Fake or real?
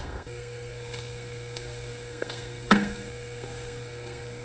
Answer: fake